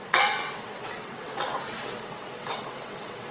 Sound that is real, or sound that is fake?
fake